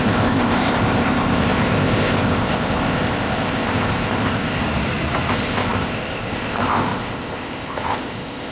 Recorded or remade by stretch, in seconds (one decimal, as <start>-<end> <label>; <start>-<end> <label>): 0.0-4.6 remade; 4.6-5.3 recorded; 5.3-8.5 remade

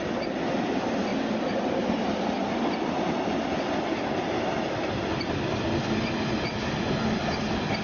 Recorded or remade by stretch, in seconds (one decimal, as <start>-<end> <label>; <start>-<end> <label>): 0.0-7.8 recorded

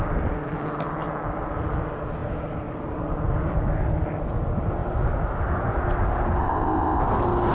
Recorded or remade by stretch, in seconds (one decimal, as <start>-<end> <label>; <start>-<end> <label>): 0.0-6.4 recorded; 6.4-7.0 remade; 7.0-7.5 recorded

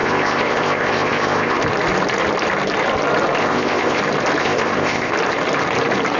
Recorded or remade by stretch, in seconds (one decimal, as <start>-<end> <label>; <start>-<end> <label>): 0.0-1.6 remade; 1.6-3.4 recorded; 3.4-4.0 remade; 4.0-4.4 recorded; 4.4-5.1 remade; 5.1-6.2 recorded

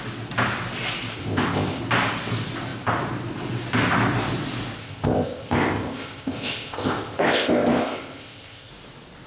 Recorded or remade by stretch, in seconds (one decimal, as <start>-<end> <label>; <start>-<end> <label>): 0.0-1.1 recorded; 1.1-1.8 remade; 1.8-4.8 recorded; 4.8-8.7 remade; 8.7-9.3 recorded